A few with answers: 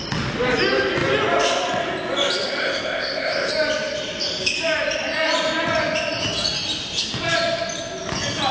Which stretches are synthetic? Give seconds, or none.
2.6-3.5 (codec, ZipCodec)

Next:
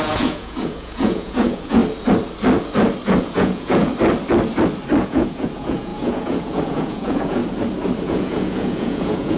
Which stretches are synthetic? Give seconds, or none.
0.0-1.8 (vocoder, Vocos); 3.2-3.9; 5.0-7.4; 8.0-9.4

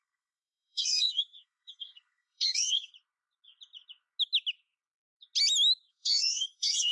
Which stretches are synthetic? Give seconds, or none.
0.0-2.9 (codec, SNAC); 5.9-6.9

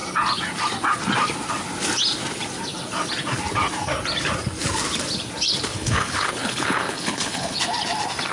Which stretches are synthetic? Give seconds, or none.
5.7-7.6 (codec, HILCodec)

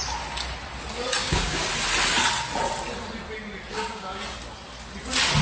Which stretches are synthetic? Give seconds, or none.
1.2-1.7 (codec, DAC); 3.7-4.2